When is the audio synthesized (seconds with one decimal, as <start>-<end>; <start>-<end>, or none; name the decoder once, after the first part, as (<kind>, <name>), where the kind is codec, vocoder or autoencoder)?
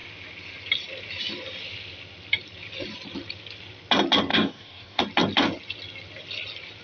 4.3-5.0 (codec, DAC)